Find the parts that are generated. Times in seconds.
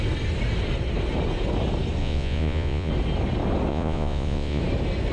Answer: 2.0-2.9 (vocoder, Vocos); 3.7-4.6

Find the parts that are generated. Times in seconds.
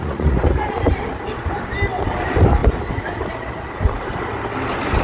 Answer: 0.0-0.8 (vocoder, Vocos)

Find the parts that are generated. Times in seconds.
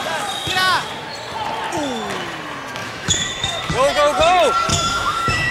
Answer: 2.8-3.6 (autoencoder, DAC-VAE); 4.7-5.5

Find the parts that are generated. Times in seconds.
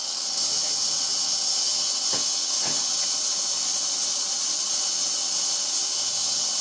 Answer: 0.0-4.1 (vocoder, WaveNeXt); 4.7-6.6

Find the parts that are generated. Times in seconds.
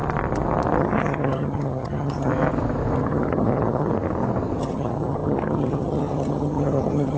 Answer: 0.8-2.3 (vocoder, HiFi-GAN); 3.0-3.9; 4.6-7.2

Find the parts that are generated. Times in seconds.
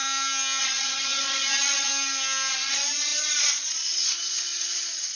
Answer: 0.6-1.9 (vocoder, Vocos); 2.5-5.1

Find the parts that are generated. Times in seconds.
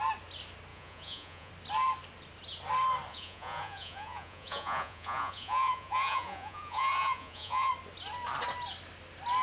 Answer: 0.7-1.5 (vocoder, Vocos); 3.1-7.7